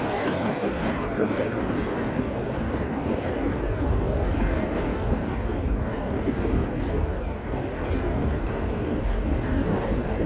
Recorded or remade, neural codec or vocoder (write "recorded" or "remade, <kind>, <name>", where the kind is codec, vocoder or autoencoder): remade, codec, DAC